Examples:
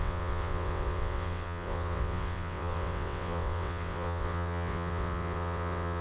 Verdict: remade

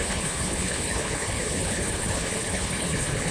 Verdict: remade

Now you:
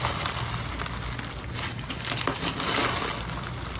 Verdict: recorded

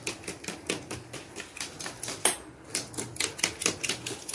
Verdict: recorded